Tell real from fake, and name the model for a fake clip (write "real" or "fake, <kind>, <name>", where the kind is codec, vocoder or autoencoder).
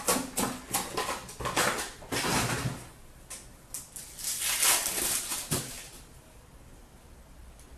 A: real